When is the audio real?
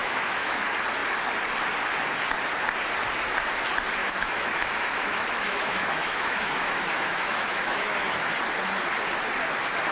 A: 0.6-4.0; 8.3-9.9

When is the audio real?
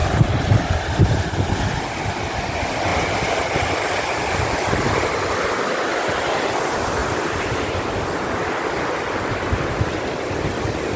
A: 0.0-11.0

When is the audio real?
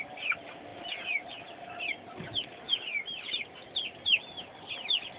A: 0.0-5.2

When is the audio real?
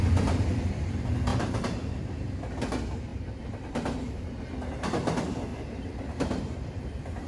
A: 0.0-1.3; 2.5-3.1; 4.4-5.5; 6.8-7.3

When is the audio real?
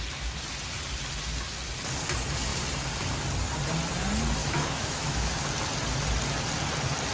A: 0.0-4.4; 5.3-7.1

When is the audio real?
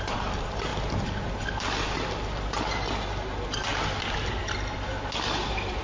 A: 0.0-5.8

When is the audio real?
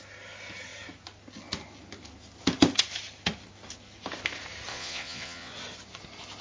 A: 0.0-4.7; 5.5-6.4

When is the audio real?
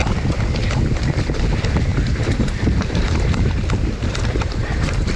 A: 0.0-1.9